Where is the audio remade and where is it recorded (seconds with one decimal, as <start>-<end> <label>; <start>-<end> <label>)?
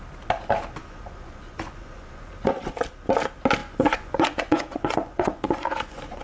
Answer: 0.0-0.8 recorded; 0.8-2.7 remade; 2.7-3.6 recorded; 3.6-6.2 remade